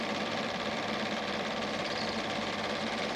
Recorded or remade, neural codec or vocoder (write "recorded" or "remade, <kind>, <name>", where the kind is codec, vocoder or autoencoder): remade, vocoder, BigVGAN v2